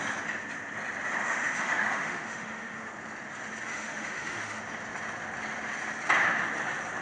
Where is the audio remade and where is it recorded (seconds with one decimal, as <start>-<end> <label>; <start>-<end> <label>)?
0.0-1.2 recorded; 1.2-2.9 remade; 2.9-3.7 recorded; 3.7-4.6 remade; 4.6-7.0 recorded